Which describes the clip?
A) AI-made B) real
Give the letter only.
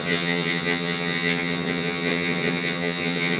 A